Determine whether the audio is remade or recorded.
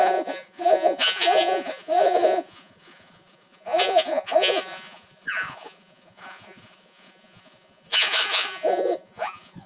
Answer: remade